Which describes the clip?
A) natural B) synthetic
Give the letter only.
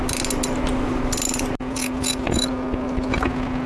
A